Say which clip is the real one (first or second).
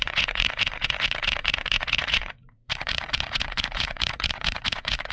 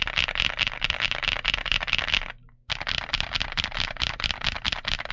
second